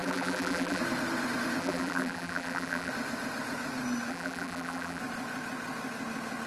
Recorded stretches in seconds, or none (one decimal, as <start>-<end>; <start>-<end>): 0.8-1.6; 2.9-4.1; 5.0-6.5